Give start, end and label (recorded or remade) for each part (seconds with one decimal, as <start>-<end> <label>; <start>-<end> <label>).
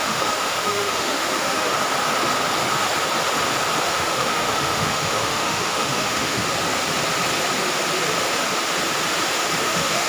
0.0-1.7 remade; 1.7-3.8 recorded; 3.8-6.4 remade; 6.4-9.6 recorded; 9.6-10.1 remade